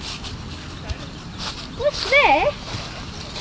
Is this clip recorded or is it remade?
recorded